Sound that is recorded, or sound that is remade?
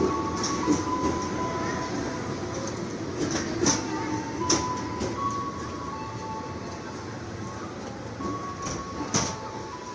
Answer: recorded